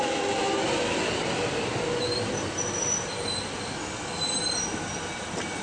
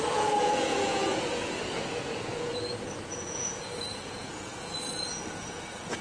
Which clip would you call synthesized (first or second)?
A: second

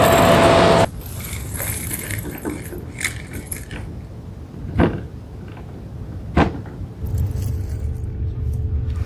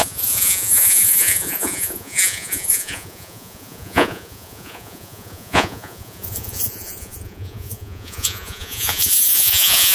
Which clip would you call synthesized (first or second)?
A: second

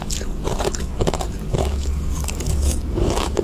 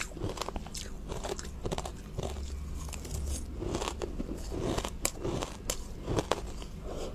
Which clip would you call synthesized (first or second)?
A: first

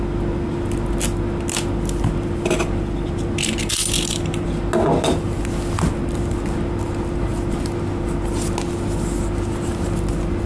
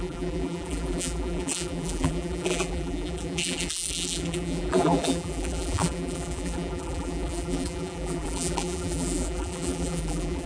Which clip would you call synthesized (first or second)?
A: second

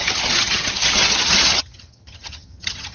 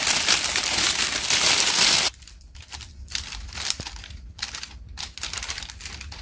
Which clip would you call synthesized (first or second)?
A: first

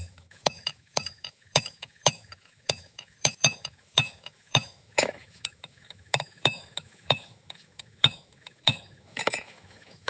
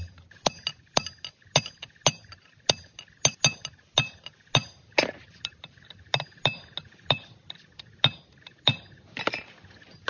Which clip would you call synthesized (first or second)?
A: first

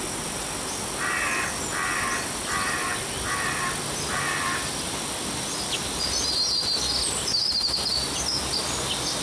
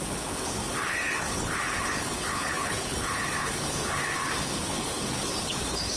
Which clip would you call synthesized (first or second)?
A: second